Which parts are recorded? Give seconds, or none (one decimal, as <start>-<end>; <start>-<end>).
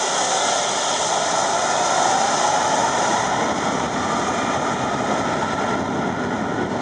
0.0-2.8; 5.3-6.8